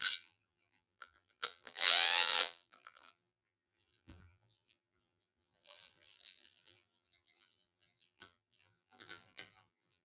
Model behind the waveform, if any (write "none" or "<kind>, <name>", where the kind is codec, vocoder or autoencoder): vocoder, BigVGAN v2